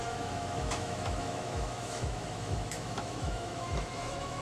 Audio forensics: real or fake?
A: fake